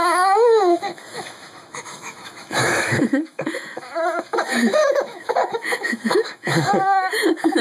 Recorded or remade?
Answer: remade